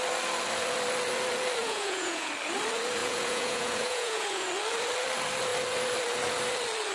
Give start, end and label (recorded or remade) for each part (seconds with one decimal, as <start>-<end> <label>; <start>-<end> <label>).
0.0-1.6 recorded; 1.6-2.3 remade; 2.3-3.0 recorded; 3.0-4.5 remade; 4.5-6.9 recorded

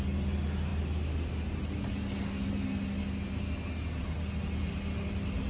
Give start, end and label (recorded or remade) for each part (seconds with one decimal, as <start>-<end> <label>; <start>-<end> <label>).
0.0-5.5 recorded

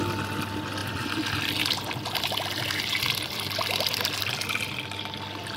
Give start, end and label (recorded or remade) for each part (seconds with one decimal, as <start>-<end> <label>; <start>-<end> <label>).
0.0-0.8 recorded; 0.8-4.2 remade; 4.2-5.6 recorded

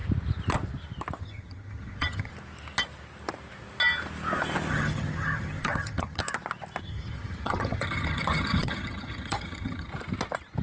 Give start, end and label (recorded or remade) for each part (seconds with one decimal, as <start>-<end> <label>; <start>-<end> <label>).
0.0-1.2 recorded; 1.2-2.3 remade; 2.3-4.7 recorded; 4.7-6.2 remade; 6.2-6.8 recorded; 6.8-9.9 remade; 9.9-10.6 recorded